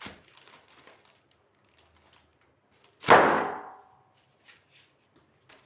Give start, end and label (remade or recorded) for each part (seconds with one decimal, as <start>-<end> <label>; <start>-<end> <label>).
0.0-5.7 recorded